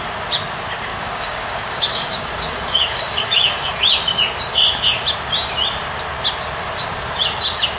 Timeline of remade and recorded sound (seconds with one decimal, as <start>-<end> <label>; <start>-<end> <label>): 0.0-0.9 recorded; 0.9-3.9 remade; 3.9-7.8 recorded